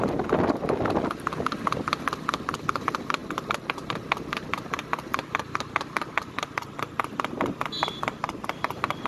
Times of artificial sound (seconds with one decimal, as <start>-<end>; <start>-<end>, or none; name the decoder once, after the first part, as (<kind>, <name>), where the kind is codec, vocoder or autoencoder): 3.2-6.5 (vocoder, BigVGAN v2); 7.8-9.1

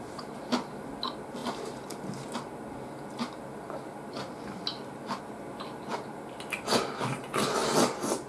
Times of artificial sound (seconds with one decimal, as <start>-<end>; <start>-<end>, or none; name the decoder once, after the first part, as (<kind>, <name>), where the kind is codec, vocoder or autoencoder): none